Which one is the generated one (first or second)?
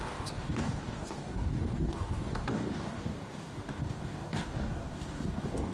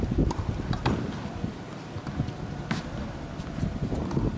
first